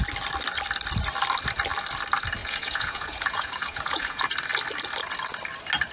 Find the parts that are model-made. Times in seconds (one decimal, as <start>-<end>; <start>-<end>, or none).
2.4-4.2